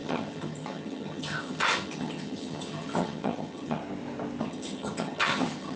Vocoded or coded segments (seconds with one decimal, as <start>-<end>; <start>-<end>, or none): 0.0-3.8; 4.4-5.8